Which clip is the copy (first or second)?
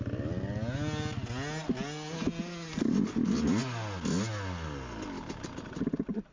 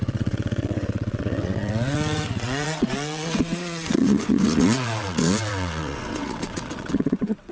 second